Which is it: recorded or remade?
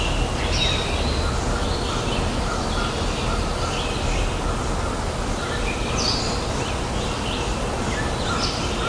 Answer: recorded